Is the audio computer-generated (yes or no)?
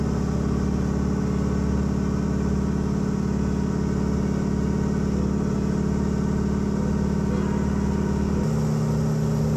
no